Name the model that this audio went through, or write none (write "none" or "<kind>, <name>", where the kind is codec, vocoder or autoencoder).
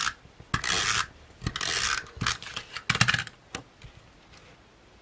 none